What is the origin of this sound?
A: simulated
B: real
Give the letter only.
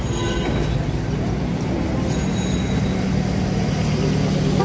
B